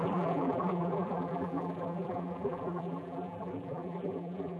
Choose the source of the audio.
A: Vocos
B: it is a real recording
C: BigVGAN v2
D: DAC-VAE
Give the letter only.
C